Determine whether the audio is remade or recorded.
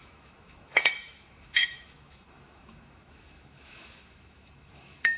remade